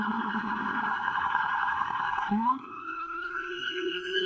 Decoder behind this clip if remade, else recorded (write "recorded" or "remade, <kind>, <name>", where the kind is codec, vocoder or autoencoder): remade, codec, SNAC